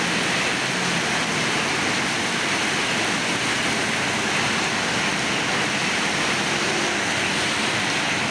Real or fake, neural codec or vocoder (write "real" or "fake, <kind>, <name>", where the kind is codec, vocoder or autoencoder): real